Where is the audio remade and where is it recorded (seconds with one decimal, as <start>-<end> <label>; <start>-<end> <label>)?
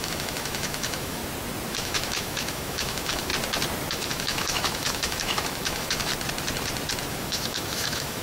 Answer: 0.0-1.2 remade; 1.2-1.7 recorded; 1.7-3.3 remade; 3.3-3.9 recorded; 3.9-6.1 remade; 6.1-7.1 recorded; 7.1-8.2 remade